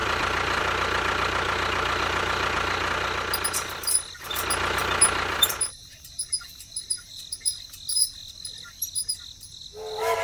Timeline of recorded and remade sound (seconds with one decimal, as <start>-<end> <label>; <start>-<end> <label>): 0.0-0.6 remade; 0.6-4.8 recorded; 4.8-7.2 remade; 7.2-10.2 recorded